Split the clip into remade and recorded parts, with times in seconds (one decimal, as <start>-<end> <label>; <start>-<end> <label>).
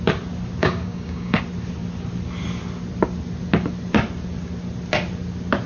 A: 0.0-0.6 recorded; 0.6-1.4 remade; 1.4-5.7 recorded